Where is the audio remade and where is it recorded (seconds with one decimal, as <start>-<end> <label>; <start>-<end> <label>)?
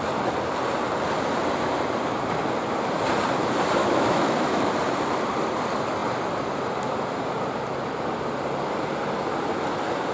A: 0.0-3.8 recorded; 3.8-4.7 remade; 4.7-10.1 recorded